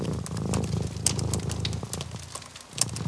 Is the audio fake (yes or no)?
no